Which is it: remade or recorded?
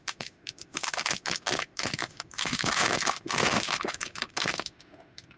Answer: remade